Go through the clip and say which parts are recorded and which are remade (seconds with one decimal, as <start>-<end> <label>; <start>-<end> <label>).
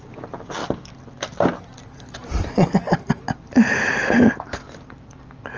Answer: 0.0-5.6 recorded